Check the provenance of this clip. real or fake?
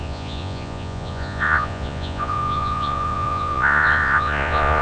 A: fake